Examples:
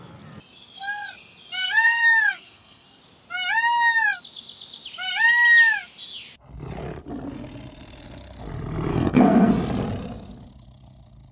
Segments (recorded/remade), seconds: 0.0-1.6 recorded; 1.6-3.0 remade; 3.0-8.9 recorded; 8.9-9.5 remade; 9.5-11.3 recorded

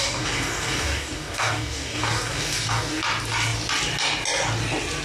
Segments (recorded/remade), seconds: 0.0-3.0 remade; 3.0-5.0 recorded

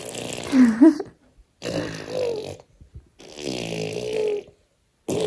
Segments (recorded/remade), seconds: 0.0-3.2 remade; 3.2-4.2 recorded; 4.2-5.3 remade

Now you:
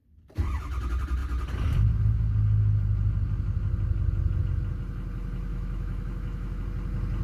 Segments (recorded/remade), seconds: 0.0-5.5 recorded; 5.5-6.6 remade; 6.6-7.2 recorded

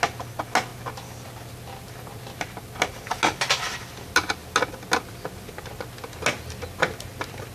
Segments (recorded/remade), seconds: 0.0-7.5 recorded

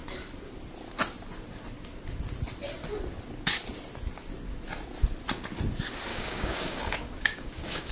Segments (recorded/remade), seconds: 0.0-6.1 recorded; 6.1-7.9 remade

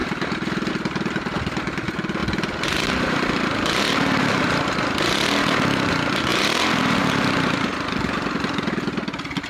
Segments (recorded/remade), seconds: 0.0-0.7 remade; 0.7-7.7 recorded; 7.7-8.6 remade; 8.6-9.5 recorded